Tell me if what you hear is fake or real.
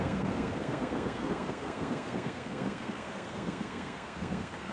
fake